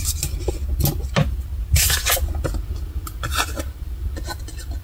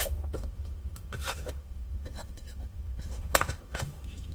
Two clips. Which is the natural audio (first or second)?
first